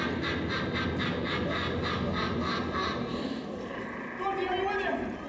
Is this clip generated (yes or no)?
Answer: no